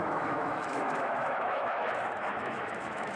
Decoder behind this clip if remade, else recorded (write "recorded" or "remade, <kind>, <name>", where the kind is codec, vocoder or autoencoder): remade, autoencoder, DAC-VAE